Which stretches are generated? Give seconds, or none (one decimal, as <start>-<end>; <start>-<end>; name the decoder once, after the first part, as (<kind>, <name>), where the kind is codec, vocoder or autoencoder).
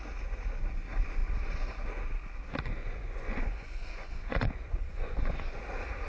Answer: 2.8-5.6 (vocoder, Vocos)